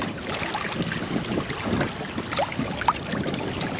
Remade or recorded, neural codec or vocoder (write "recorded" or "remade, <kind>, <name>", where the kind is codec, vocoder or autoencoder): recorded